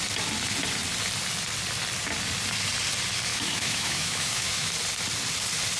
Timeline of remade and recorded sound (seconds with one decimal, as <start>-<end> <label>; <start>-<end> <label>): 0.0-3.3 recorded; 3.3-4.7 remade; 4.7-5.8 recorded